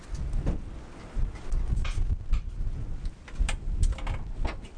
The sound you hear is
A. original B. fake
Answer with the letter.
A